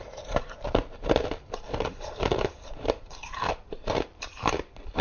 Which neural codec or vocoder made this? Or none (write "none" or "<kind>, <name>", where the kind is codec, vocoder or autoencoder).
vocoder, BigVGAN v2